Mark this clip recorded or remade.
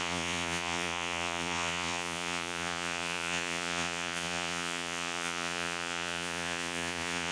remade